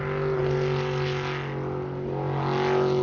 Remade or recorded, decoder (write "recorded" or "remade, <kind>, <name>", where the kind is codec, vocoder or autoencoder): recorded